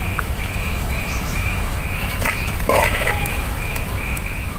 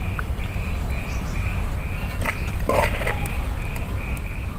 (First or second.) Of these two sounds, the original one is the second